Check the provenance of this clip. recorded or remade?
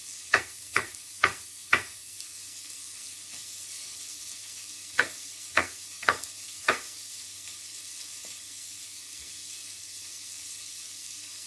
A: remade